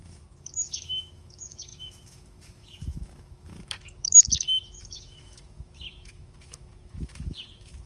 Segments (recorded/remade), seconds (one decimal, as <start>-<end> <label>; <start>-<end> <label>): 0.0-7.9 remade